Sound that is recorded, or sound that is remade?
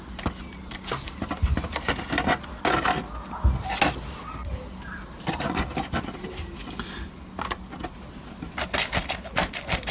recorded